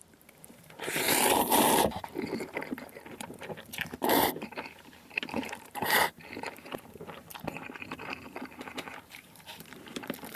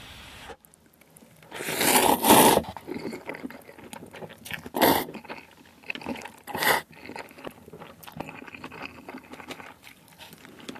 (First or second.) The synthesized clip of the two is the first